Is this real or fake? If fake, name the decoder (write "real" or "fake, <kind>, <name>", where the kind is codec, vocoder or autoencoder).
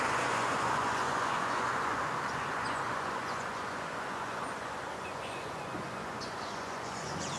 fake, vocoder, Vocos